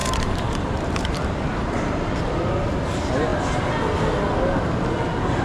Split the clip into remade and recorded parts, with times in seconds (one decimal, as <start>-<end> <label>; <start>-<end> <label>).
0.0-2.1 remade; 2.1-5.4 recorded